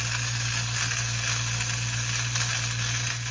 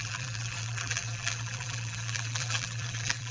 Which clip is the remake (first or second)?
second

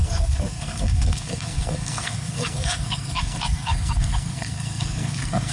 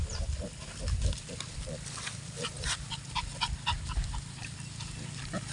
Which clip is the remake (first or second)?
first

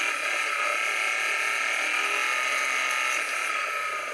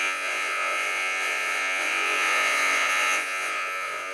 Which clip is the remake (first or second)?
second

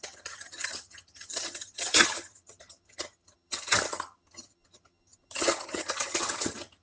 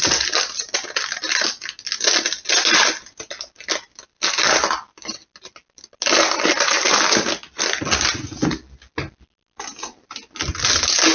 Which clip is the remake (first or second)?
first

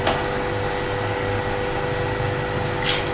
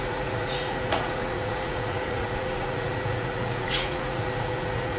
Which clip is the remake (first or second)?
second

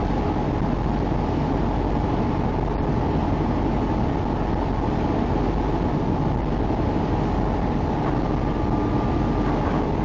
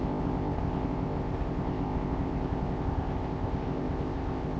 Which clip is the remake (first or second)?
second